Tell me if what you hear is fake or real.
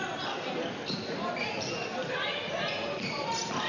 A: real